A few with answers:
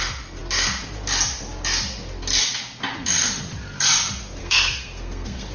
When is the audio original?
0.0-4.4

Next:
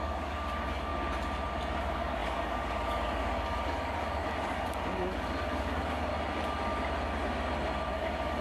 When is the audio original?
0.9-1.8; 6.1-7.9

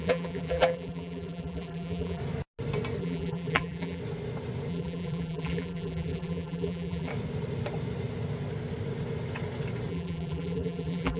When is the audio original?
2.2-3.0; 4.0-4.7; 7.1-9.9

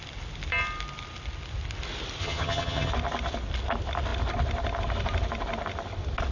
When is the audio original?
0.0-2.2; 2.9-6.3